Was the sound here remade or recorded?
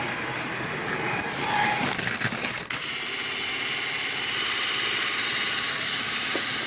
recorded